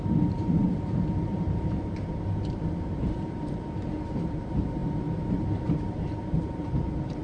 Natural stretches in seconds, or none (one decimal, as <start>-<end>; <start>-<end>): none